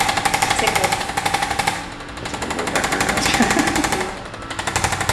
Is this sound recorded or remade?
recorded